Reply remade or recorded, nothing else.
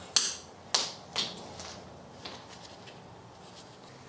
recorded